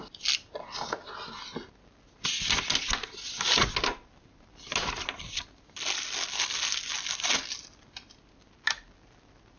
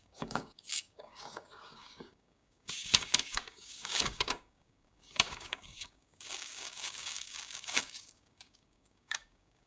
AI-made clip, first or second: second